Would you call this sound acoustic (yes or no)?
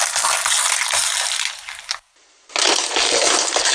yes